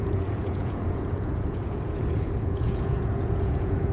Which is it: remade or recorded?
remade